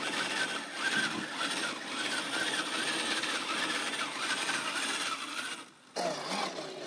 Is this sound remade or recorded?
recorded